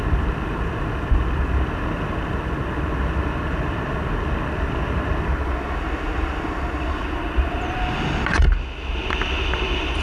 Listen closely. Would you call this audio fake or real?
real